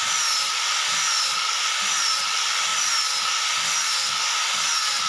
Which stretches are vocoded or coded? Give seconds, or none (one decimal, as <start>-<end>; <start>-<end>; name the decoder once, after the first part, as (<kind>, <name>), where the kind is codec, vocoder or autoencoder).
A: none